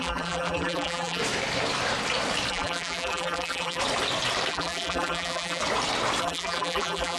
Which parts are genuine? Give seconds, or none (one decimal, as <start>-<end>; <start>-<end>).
1.2-2.5; 3.8-4.5; 5.6-6.2